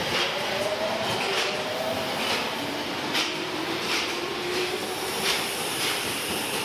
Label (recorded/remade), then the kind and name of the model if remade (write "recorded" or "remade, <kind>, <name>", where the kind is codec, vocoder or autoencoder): remade, vocoder, BigVGAN v2